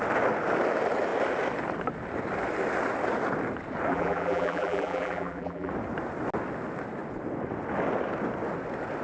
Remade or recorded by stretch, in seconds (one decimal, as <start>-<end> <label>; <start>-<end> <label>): 0.0-3.9 recorded; 3.9-5.7 remade; 5.7-9.0 recorded